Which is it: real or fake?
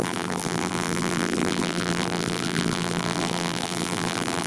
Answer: fake